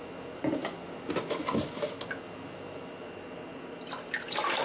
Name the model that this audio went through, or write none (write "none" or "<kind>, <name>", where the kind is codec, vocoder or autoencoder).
none